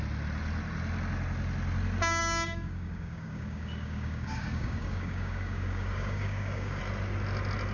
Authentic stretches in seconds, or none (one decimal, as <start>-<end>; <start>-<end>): 0.0-2.2; 6.8-7.7